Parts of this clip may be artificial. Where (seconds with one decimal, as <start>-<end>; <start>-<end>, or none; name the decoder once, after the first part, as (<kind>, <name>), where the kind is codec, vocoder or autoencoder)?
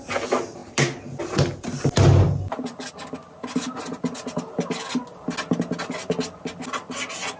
none